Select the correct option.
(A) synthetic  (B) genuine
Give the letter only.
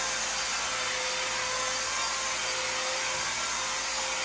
B